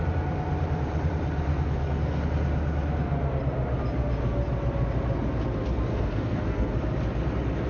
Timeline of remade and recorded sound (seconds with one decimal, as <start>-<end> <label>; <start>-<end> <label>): 0.0-1.5 recorded; 1.5-2.2 remade; 2.2-5.9 recorded; 5.9-6.7 remade; 6.7-7.7 recorded